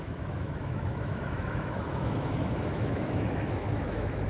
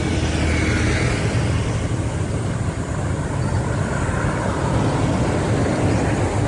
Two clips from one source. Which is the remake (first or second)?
first